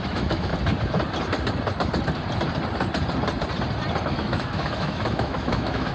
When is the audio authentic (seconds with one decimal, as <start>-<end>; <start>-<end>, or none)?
0.5-4.0